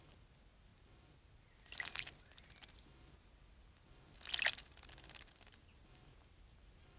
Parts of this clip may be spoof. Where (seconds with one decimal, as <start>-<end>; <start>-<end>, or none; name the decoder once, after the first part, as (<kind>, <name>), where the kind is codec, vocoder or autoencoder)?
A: none